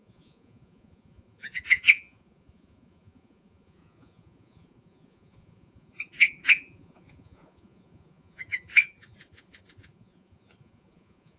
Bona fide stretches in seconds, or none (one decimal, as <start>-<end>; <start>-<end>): none